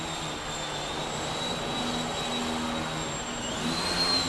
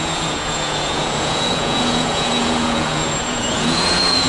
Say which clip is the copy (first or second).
second